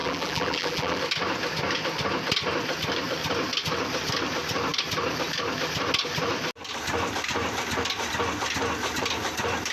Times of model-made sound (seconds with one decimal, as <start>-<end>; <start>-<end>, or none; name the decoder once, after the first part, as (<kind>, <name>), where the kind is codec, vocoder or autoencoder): 0.0-1.0 (vocoder, BigVGAN v2)